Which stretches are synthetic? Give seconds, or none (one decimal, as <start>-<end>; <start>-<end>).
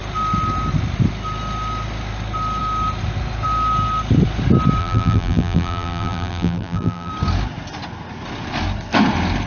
4.8-7.1